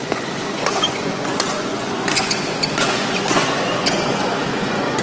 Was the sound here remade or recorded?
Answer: remade